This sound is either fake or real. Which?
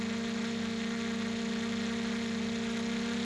real